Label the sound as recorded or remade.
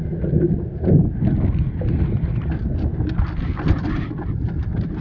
recorded